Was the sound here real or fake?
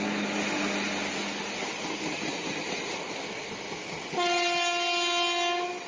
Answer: real